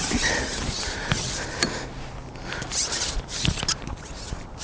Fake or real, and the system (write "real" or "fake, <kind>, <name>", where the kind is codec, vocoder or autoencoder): real